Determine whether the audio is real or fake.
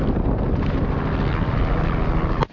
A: real